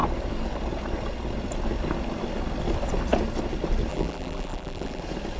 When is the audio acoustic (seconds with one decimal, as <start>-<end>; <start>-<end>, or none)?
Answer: 0.0-3.9; 5.0-5.4